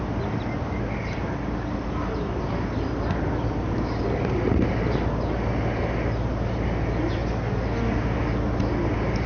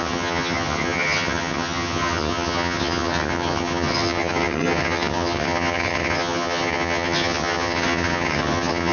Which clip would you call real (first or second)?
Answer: first